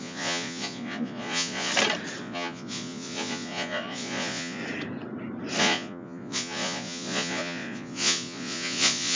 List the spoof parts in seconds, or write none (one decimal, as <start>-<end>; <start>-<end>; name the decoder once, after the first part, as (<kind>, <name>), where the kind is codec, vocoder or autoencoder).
0.0-1.7 (vocoder, Vocos); 2.2-4.6; 5.6-9.2